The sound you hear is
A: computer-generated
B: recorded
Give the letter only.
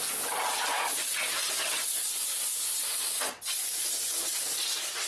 B